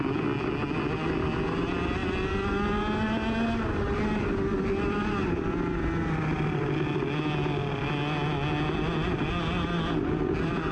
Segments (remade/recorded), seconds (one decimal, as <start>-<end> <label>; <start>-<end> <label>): 0.0-10.7 recorded